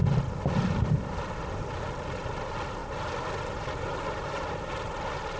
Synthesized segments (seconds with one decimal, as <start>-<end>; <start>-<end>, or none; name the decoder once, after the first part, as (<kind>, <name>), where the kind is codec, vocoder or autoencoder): none